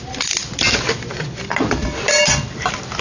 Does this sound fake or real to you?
real